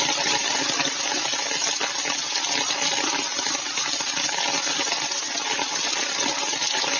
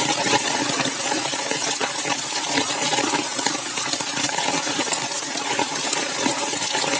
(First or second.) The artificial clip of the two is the second